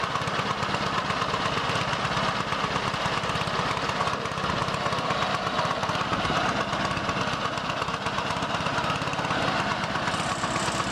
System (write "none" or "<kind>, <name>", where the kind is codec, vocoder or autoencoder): none